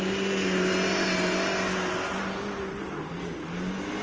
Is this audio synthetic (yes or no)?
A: no